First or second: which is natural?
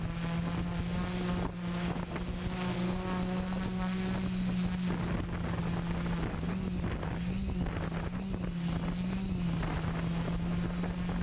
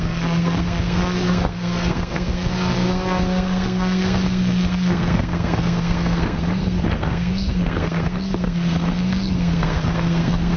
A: first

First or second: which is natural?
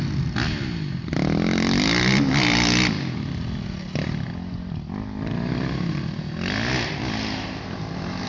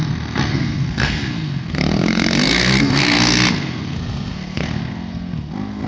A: first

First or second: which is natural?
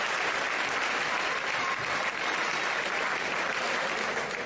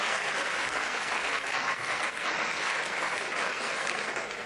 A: first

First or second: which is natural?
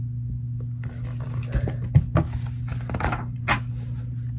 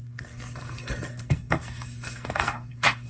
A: first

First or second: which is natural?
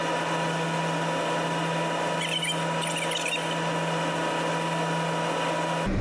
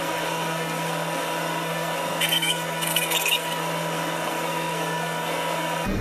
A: first